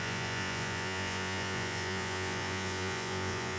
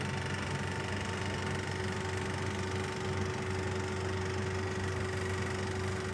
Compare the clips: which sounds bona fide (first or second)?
second